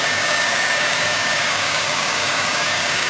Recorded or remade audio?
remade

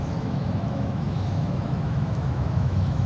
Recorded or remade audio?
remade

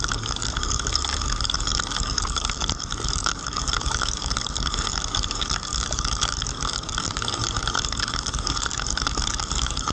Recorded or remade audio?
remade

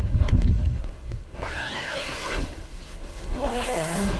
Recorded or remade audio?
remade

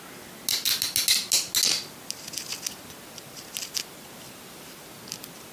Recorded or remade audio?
recorded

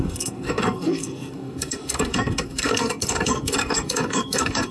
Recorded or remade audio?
remade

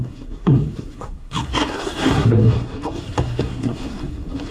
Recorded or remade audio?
remade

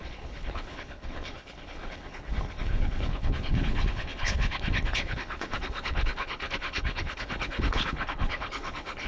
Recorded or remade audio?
remade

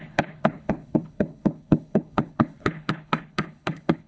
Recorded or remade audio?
remade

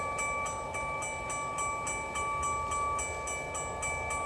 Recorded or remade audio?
recorded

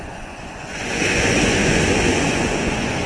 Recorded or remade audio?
remade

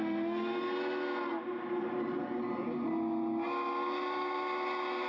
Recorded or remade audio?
recorded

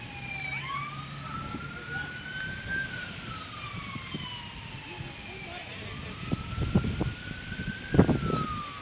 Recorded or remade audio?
recorded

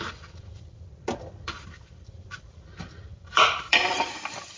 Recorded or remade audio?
remade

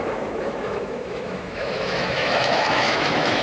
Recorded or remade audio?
remade